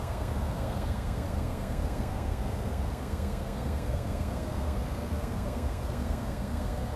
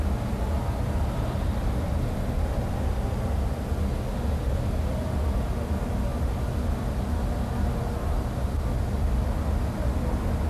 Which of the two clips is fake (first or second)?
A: first